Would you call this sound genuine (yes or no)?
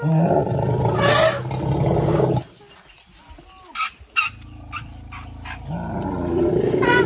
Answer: yes